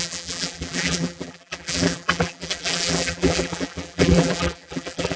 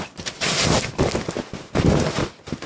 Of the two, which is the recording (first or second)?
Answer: second